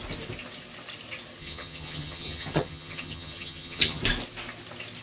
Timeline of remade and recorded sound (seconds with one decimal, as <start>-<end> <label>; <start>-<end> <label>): 0.0-1.4 recorded; 1.4-4.0 remade; 4.0-5.0 recorded